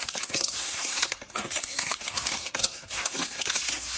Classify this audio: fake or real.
fake